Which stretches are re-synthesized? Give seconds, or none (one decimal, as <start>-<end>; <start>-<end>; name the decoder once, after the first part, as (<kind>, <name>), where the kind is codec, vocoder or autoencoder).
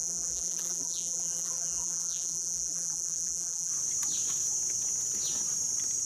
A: 0.0-3.7 (vocoder, BigVGAN v2)